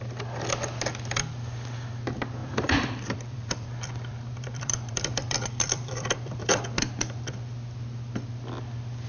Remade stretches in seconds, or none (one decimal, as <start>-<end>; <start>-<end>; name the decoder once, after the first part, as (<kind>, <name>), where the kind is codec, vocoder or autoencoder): 2.4-6.6 (vocoder, BigVGAN v2)